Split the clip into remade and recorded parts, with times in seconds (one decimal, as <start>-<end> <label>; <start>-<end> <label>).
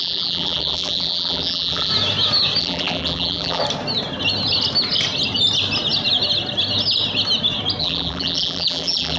0.0-1.9 remade; 1.9-2.6 recorded; 2.6-3.6 remade; 3.6-7.8 recorded; 7.8-9.2 remade